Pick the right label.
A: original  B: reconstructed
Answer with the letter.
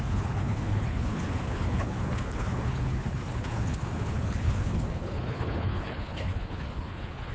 B